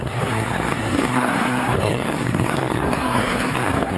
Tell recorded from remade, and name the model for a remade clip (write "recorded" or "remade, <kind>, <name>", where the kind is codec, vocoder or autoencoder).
remade, codec, SNAC